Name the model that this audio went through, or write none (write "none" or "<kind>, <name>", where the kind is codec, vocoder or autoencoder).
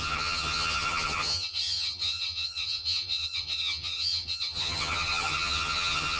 vocoder, HiFi-GAN